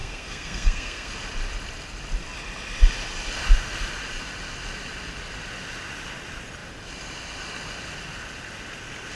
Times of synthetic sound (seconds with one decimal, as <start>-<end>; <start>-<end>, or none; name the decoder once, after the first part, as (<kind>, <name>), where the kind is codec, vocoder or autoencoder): 0.0-1.1 (codec, SNAC)